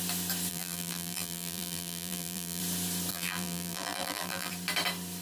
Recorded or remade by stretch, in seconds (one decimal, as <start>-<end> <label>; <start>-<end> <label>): 0.0-0.5 recorded; 0.5-2.6 remade; 2.6-3.1 recorded; 3.1-4.5 remade; 4.5-5.2 recorded